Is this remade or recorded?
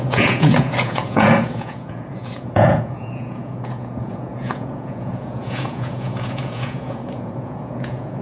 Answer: remade